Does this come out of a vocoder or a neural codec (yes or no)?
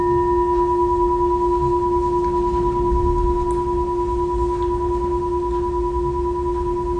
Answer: no